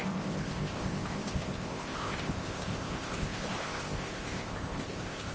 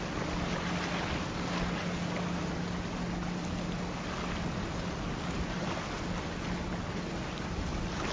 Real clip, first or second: second